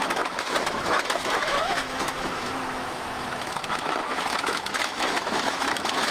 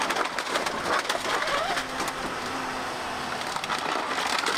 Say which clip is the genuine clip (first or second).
second